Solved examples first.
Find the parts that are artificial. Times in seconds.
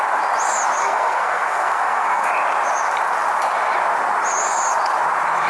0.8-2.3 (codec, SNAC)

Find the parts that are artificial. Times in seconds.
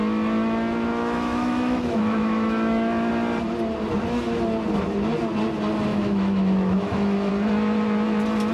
0.9-3.1 (autoencoder, DAC-VAE); 5.9-7.3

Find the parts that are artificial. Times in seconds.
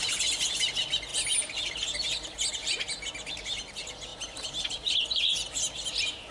none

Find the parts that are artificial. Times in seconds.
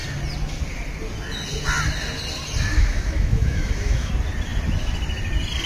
2.7-4.1 (autoencoder, DAC-VAE)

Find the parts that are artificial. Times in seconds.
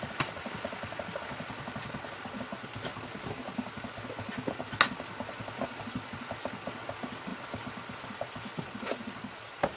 none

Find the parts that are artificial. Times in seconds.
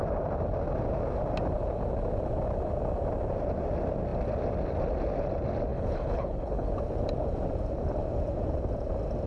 5.7-6.7 (codec, HILCodec)